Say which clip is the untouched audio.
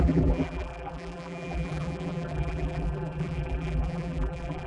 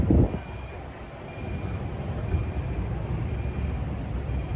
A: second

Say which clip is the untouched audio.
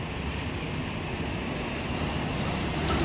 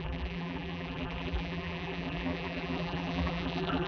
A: first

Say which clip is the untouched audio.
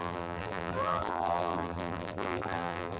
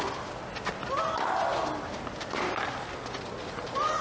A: second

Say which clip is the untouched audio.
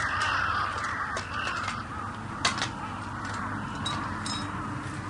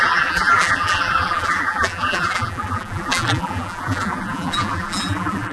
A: first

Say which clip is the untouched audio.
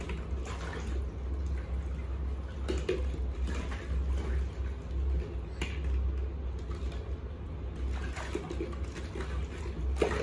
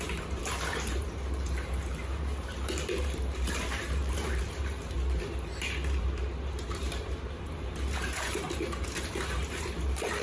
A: first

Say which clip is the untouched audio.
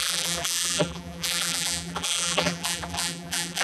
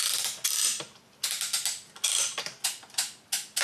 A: second